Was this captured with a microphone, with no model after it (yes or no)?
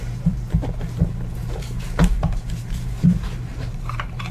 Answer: no